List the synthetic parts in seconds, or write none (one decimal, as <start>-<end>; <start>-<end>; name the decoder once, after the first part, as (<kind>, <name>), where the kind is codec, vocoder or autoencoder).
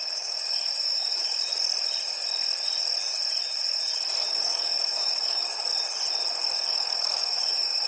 0.0-1.5 (autoencoder, DAC-VAE); 4.3-5.7; 6.7-7.9